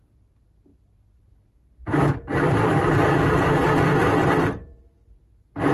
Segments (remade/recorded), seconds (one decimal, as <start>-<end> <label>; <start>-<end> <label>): 0.0-5.7 recorded